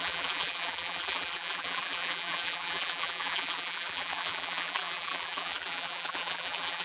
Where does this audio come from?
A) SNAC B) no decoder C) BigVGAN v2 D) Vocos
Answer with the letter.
C